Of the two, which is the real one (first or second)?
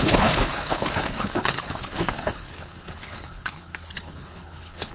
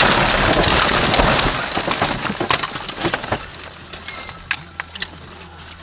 second